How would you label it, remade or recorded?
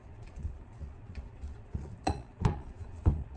remade